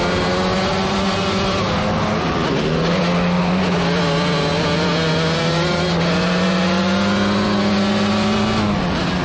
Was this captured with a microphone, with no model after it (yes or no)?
yes